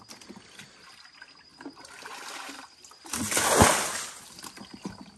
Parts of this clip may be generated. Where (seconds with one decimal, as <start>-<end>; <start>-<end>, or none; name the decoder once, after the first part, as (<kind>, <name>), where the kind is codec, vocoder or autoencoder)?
none